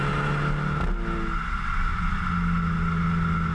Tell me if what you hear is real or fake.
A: real